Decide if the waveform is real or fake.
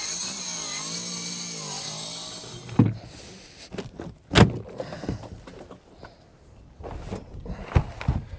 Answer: real